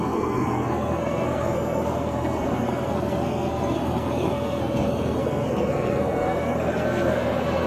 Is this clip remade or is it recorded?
remade